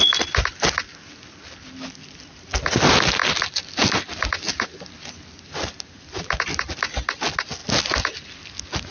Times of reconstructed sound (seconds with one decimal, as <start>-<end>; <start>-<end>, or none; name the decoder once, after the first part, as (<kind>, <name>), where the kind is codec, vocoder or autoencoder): none